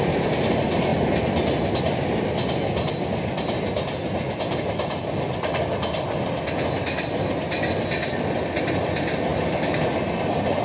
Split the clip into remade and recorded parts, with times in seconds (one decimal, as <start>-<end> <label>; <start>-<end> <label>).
0.0-9.3 recorded; 9.3-10.6 remade